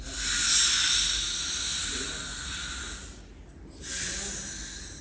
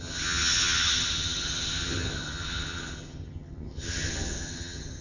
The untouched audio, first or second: first